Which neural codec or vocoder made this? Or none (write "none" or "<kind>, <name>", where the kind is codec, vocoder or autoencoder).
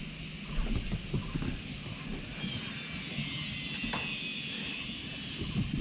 none